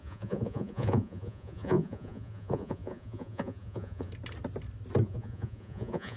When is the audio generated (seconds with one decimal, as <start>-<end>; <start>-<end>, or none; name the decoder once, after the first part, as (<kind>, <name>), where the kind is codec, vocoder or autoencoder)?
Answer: 0.0-4.1 (vocoder, Vocos); 5.0-6.2